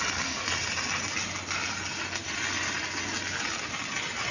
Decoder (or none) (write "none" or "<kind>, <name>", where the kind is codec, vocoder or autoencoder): none